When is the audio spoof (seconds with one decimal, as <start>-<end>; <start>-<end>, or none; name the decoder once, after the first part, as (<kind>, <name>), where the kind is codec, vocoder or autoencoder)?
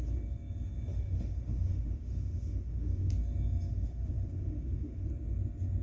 0.9-3.1 (autoencoder, DAC-VAE); 3.7-5.1